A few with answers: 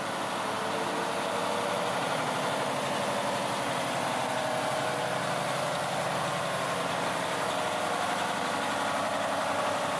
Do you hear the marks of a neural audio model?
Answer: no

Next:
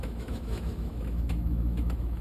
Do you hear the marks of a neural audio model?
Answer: yes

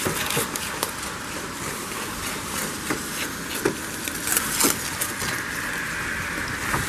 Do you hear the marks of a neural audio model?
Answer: no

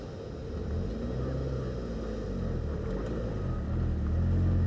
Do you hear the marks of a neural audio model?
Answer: no